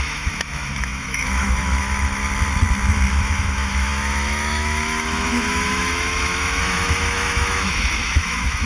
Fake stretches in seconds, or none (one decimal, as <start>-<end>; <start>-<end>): 0.0-2.2; 3.1-8.7